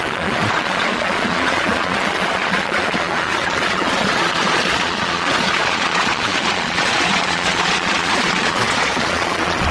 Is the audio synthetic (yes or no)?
yes